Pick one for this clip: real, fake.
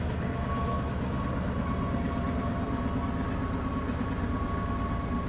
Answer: real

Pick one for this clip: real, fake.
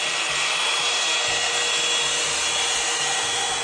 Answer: real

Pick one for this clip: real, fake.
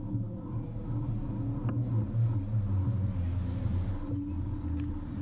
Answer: real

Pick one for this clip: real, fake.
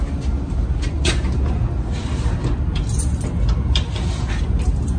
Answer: real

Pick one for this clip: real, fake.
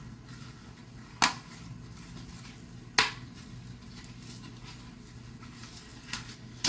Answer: real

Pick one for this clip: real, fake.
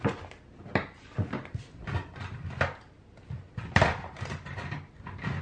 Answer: real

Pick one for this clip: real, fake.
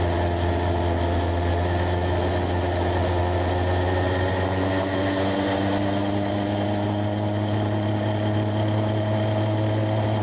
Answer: real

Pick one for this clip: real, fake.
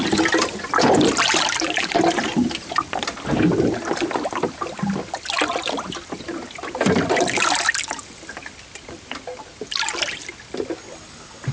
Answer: real